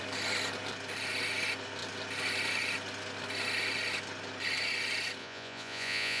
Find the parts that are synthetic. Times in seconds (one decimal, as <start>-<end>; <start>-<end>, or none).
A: 5.2-6.2